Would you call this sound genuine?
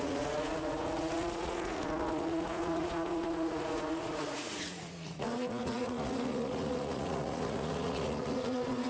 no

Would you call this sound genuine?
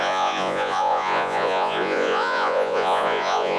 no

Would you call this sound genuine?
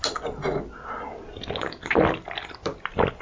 yes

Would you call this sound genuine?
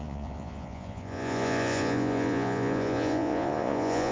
no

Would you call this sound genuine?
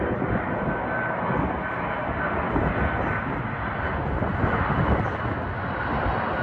yes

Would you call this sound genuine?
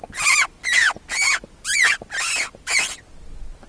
yes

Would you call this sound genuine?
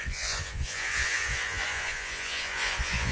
no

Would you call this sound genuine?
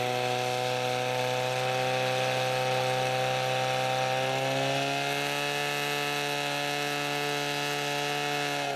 yes